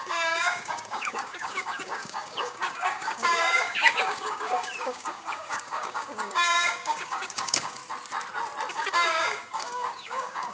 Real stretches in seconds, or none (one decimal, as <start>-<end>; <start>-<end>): 7.8-8.7